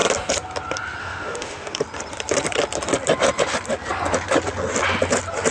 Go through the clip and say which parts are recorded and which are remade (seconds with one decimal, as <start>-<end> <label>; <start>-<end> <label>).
0.0-1.0 recorded; 1.0-1.8 remade; 1.8-5.5 recorded